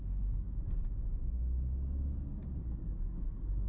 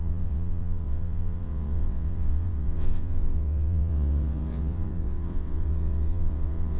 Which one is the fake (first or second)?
second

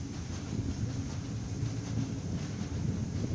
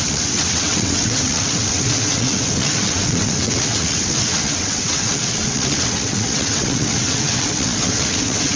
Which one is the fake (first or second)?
second